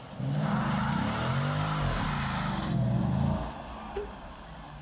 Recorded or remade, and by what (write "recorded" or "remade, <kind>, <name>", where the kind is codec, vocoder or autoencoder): recorded